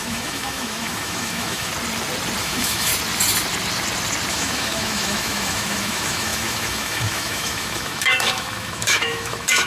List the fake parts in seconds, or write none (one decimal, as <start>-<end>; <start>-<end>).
0.0-1.7; 2.4-2.9; 4.3-9.7